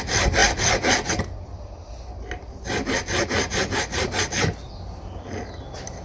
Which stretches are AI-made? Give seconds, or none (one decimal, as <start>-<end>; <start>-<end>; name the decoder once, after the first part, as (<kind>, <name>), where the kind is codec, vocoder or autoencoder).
none

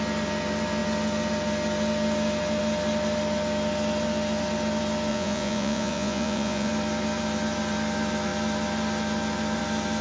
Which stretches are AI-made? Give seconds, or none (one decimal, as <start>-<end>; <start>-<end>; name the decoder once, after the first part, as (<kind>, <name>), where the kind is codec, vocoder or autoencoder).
5.1-6.7 (vocoder, Vocos)

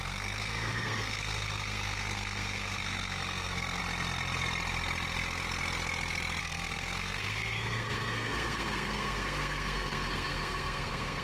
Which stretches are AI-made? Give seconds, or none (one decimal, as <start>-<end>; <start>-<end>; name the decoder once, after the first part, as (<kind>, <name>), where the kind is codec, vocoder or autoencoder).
0.0-3.8 (codec, SNAC); 6.4-11.2

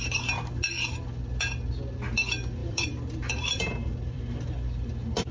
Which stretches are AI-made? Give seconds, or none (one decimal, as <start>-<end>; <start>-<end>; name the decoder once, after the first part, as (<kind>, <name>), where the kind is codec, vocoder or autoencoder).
2.6-4.2 (vocoder, BigVGAN v2)

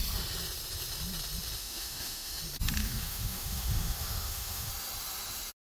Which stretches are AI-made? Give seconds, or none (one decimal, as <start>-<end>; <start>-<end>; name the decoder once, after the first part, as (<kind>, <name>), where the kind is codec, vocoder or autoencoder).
1.6-2.4 (autoencoder, DAC-VAE); 2.8-4.7

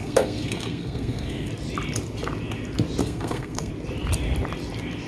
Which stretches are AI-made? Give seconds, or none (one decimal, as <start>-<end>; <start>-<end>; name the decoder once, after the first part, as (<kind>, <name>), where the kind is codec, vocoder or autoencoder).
0.0-1.5 (codec, SNAC); 3.0-3.7

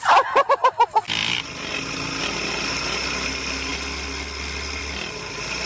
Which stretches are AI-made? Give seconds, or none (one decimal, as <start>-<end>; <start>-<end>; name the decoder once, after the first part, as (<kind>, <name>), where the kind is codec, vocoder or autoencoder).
none